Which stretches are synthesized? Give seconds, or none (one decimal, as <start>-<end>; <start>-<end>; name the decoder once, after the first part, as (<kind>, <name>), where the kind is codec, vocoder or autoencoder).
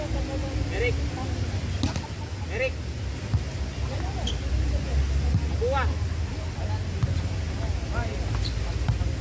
0.4-1.8 (vocoder, BigVGAN v2)